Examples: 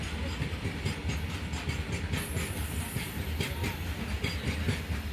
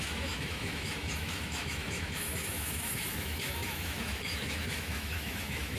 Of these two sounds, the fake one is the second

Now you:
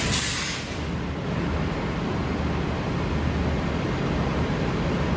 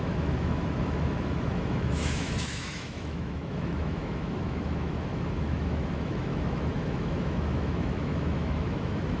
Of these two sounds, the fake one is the second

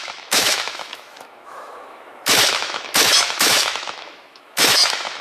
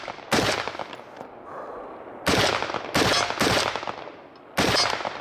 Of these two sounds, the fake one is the first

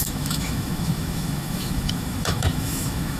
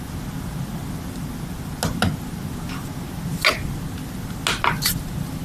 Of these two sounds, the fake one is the first